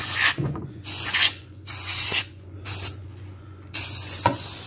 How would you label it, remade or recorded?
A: remade